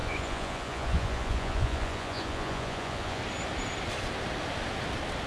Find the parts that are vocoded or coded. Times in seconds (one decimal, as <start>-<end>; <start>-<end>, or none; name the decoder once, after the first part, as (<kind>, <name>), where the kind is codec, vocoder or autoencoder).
0.0-3.2 (vocoder, Vocos)